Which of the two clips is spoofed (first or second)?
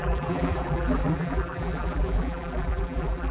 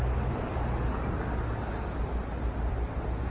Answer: first